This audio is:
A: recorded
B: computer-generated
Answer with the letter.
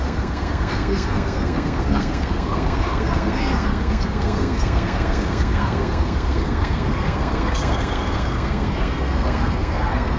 B